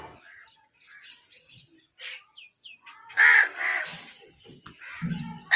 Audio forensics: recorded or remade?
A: recorded